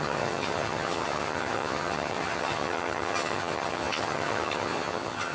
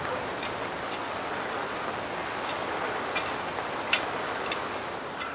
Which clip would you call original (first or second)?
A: second